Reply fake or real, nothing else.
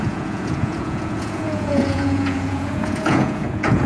fake